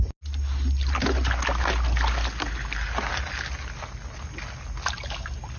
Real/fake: real